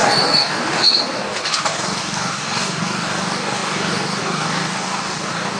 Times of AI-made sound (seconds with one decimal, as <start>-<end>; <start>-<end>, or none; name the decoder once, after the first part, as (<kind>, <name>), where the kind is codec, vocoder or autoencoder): 0.0-5.6 (codec, DAC)